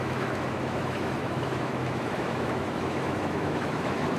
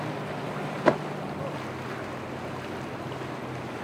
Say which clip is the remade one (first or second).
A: first